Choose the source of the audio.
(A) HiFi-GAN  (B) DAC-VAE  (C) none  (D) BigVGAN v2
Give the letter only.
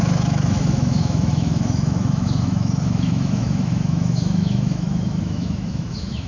B